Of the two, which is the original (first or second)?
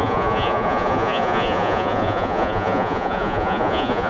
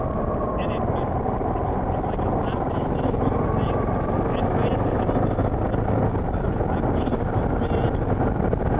second